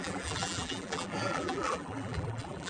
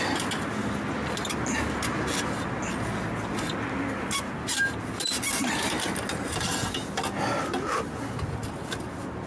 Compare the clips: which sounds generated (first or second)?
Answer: first